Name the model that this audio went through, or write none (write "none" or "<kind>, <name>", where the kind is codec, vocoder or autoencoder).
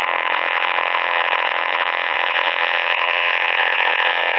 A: vocoder, Vocos